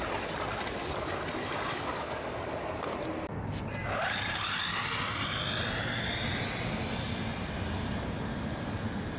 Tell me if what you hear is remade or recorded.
recorded